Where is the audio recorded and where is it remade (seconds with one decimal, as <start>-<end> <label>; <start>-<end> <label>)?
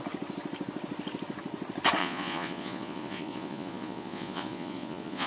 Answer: 0.0-2.0 recorded; 2.0-5.3 remade